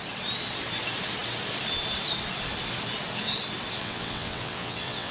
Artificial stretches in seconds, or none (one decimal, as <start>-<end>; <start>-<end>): 3.8-5.1